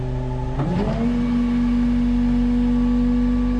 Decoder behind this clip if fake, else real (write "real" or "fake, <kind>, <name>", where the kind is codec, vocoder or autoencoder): real